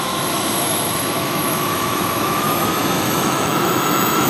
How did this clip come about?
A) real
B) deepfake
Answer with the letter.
B